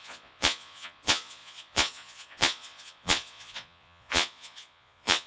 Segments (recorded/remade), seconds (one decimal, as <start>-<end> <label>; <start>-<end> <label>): 0.0-5.3 remade

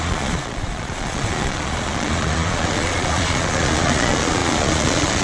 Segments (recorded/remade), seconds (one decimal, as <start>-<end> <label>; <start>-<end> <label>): 0.0-5.2 remade

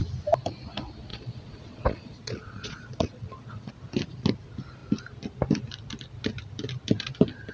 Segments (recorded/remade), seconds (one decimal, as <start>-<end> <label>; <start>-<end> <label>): 0.0-1.1 recorded; 1.1-3.7 remade; 3.7-7.5 recorded

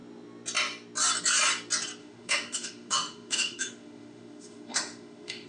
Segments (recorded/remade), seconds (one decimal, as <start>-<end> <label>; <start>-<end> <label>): 0.0-2.0 recorded; 2.0-5.5 remade

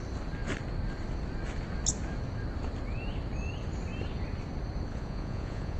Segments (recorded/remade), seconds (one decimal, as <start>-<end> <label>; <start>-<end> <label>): 0.0-4.9 recorded; 4.9-5.8 remade